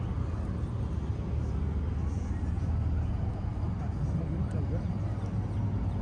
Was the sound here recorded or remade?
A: recorded